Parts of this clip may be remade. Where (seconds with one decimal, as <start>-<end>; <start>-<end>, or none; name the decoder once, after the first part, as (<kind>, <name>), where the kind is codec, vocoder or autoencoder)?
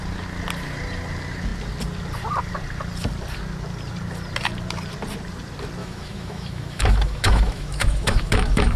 5.8-8.8 (autoencoder, DAC-VAE)